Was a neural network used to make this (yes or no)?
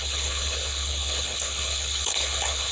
yes